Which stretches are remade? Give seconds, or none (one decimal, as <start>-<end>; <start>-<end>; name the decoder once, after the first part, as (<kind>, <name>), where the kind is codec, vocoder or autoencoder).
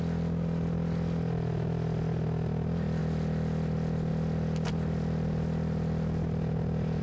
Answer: none